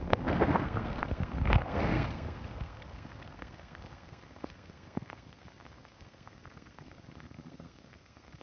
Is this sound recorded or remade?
remade